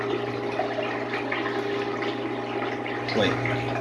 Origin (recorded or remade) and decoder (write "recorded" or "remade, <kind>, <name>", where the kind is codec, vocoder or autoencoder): recorded